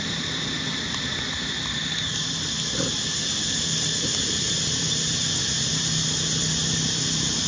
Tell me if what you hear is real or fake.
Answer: real